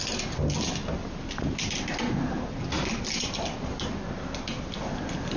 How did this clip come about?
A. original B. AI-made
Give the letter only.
A